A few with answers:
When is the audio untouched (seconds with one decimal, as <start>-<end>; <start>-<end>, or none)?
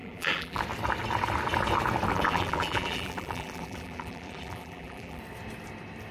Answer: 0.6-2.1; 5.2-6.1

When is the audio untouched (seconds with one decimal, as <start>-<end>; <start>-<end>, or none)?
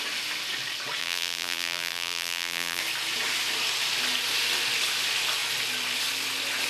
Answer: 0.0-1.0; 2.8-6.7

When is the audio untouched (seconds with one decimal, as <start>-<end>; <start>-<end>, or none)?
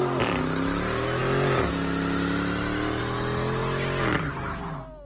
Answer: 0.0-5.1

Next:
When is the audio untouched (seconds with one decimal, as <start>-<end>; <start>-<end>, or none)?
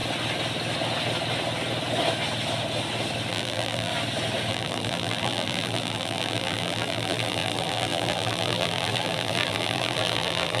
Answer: 0.0-3.3; 3.9-4.5